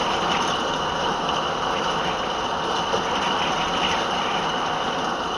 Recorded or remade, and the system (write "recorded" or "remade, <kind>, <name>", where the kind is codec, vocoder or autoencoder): recorded